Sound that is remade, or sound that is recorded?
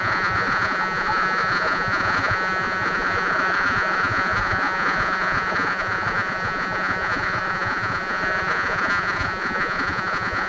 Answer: remade